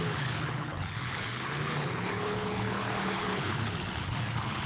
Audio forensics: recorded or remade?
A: remade